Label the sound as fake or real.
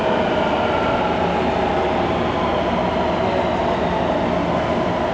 real